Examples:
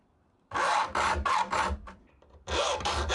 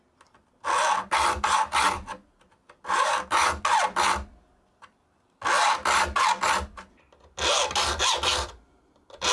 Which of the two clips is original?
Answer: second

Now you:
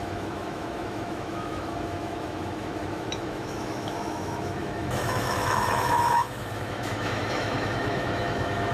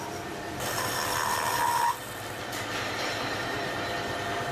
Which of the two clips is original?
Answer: second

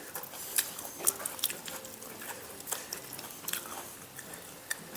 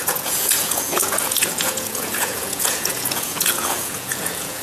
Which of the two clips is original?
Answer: first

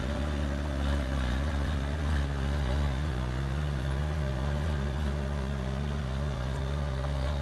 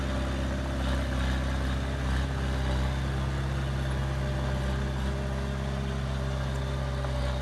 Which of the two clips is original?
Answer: second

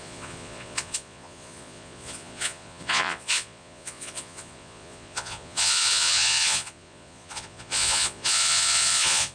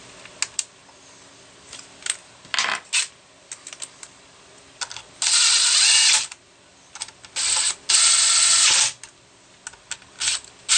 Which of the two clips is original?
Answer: second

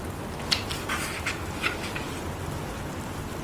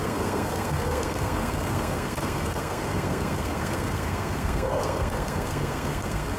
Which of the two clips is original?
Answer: first